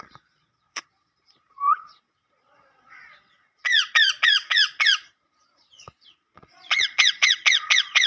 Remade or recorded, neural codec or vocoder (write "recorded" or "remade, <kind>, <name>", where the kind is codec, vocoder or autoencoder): remade, vocoder, Vocos